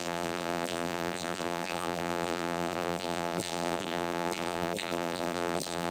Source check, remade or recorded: remade